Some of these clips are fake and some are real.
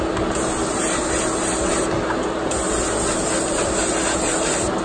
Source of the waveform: real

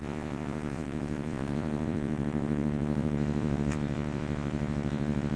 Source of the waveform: fake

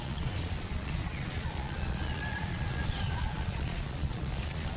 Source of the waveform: fake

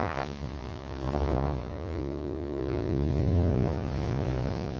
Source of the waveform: fake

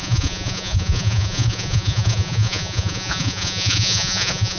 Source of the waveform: fake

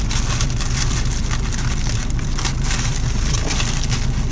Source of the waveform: real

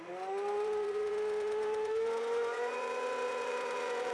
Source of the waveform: fake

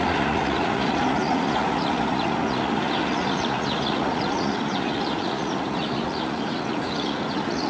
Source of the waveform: fake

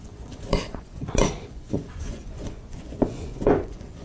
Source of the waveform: fake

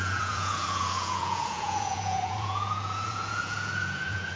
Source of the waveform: fake